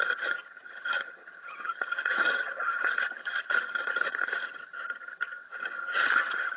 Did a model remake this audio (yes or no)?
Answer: yes